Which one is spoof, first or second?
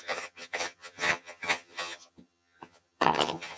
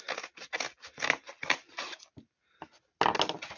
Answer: first